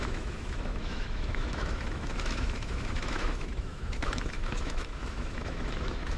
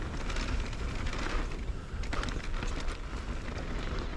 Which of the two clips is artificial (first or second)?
first